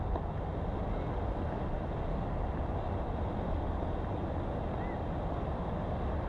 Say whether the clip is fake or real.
real